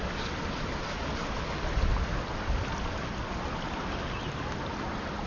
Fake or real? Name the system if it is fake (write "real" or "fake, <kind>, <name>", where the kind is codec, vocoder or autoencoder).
real